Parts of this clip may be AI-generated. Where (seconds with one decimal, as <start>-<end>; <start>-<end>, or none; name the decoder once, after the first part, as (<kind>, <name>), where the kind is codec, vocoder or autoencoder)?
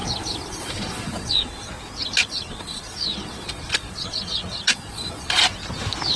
0.0-1.7 (vocoder, Vocos); 2.2-5.4